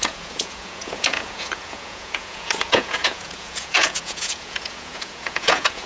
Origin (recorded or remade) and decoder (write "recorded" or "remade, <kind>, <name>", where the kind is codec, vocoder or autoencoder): remade, vocoder, Vocos